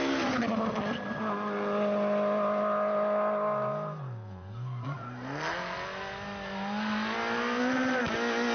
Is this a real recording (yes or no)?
yes